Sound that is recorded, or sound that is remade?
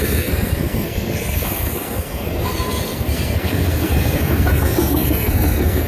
remade